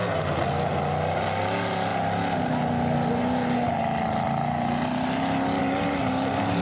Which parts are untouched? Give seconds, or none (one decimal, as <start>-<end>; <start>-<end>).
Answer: 0.0-6.6